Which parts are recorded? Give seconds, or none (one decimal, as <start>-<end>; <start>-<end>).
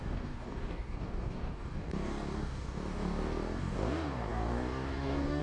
none